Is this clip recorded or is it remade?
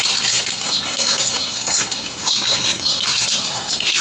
remade